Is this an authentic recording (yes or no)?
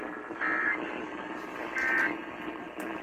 yes